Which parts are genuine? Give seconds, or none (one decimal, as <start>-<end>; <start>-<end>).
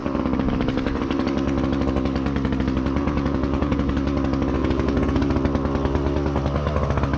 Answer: 0.0-3.0; 3.9-4.6; 5.2-7.2